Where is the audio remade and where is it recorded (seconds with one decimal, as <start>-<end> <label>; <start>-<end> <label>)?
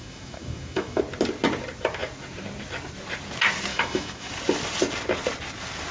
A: 0.0-1.0 remade; 1.0-3.7 recorded; 3.7-4.3 remade; 4.3-5.9 recorded